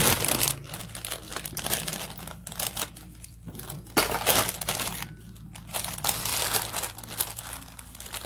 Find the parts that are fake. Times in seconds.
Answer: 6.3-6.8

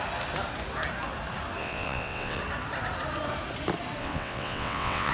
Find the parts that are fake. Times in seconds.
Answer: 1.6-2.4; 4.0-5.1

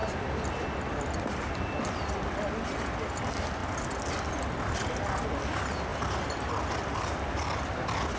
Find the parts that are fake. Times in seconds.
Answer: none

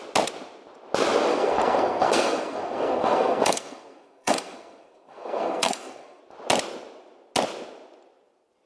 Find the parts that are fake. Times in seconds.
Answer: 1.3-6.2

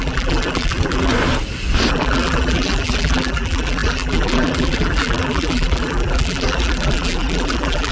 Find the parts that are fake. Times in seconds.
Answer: 0.0-1.1; 1.9-7.9

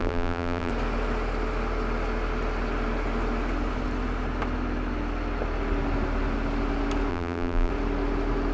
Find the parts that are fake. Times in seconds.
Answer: 0.0-0.7; 7.1-7.7

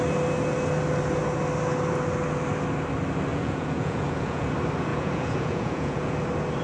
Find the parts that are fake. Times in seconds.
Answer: 3.3-4.5; 4.9-6.1

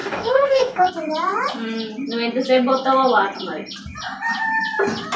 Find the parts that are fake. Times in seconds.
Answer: 0.0-0.9